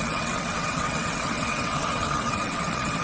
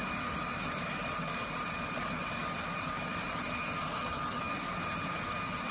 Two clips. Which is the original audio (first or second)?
second